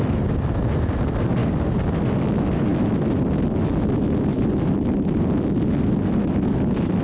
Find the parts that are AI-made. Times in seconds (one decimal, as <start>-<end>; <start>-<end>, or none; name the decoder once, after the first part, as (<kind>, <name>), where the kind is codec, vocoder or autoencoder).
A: none